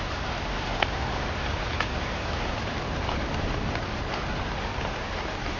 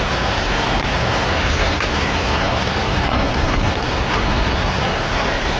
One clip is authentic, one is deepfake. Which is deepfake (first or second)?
second